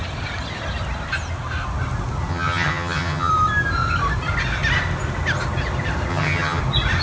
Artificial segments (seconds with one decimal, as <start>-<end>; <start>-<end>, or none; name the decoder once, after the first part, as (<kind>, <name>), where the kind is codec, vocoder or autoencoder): 2.3-3.3 (vocoder, HiFi-GAN); 6.1-6.6